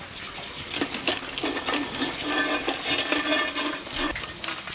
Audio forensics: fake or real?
real